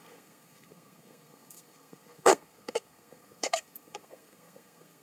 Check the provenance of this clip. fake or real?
fake